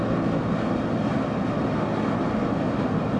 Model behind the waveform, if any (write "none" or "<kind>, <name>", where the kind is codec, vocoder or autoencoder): none